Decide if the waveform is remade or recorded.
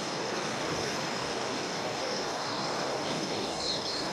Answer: remade